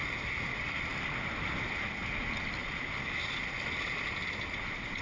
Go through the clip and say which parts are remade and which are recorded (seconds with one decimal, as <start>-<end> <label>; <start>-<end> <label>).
0.0-5.0 recorded